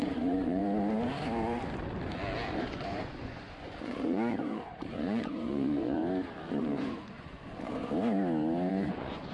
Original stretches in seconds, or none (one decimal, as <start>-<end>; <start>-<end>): 0.6-2.6; 6.0-6.5; 7.8-8.7